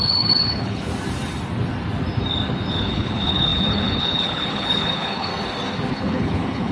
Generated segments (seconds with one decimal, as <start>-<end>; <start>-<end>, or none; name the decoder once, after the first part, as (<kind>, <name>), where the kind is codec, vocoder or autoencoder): 0.0-0.9 (codec, HILCodec); 2.7-5.3; 5.9-6.7